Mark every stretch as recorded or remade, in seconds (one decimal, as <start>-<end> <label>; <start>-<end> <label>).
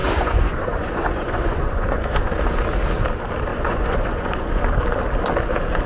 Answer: 0.0-2.3 remade; 2.3-3.5 recorded; 3.5-4.6 remade; 4.6-5.9 recorded